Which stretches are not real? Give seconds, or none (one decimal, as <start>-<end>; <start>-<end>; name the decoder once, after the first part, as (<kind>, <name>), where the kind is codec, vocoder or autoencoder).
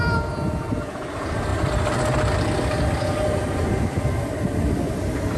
none